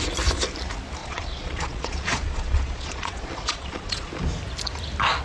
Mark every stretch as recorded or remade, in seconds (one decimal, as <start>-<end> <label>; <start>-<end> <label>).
0.0-1.0 recorded; 1.0-4.1 remade; 4.1-5.2 recorded